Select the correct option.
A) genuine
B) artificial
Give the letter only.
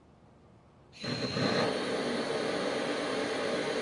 A